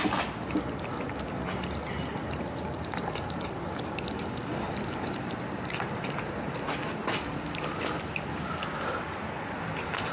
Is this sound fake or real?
real